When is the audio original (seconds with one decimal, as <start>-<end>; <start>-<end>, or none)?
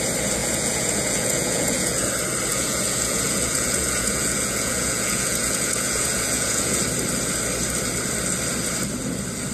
0.0-0.4; 2.1-2.5; 6.8-9.5